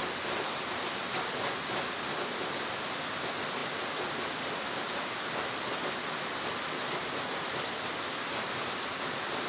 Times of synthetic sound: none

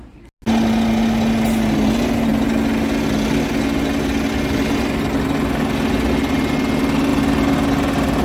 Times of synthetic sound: none

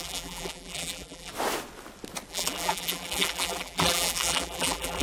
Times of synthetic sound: 0.0-1.3 (vocoder, BigVGAN v2); 2.3-5.0

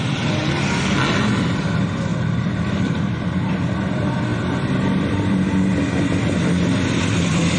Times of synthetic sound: 0.0-0.4 (vocoder, BigVGAN v2); 1.4-4.3; 5.0-7.6

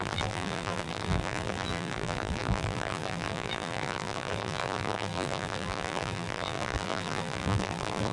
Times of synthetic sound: 0.0-8.1 (vocoder, BigVGAN v2)